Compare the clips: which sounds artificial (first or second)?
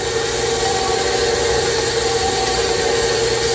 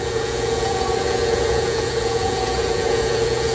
second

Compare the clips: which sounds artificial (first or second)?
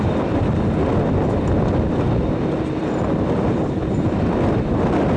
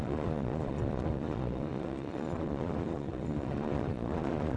second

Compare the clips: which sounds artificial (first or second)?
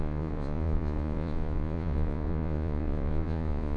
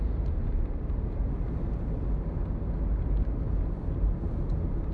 first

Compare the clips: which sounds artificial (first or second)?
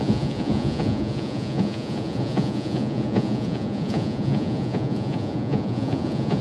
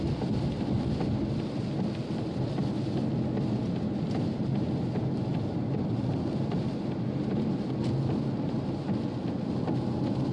first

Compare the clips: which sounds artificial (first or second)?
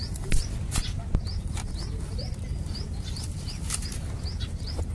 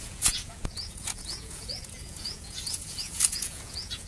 second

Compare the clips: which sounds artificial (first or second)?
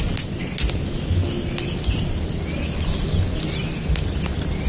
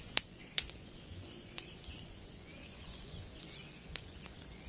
second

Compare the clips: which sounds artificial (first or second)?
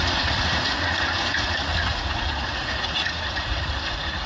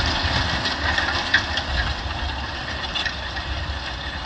first